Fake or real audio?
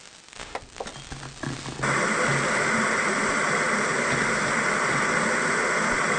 real